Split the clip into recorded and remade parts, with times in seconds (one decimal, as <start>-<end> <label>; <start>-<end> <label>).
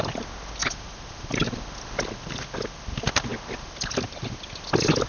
0.0-0.6 recorded; 0.6-1.6 remade; 1.6-5.1 recorded